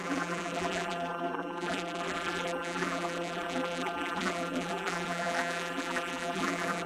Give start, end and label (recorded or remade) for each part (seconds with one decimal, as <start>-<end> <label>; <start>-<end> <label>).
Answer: 0.0-6.9 remade